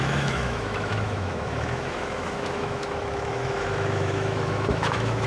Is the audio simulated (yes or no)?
yes